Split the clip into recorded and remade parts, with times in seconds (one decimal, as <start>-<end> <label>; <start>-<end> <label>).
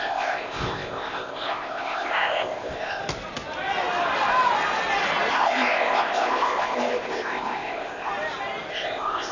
0.0-3.0 remade; 3.0-5.3 recorded; 5.3-8.1 remade; 8.1-8.7 recorded; 8.7-9.3 remade